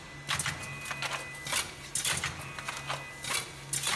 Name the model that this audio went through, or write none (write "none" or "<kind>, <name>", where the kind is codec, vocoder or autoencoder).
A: none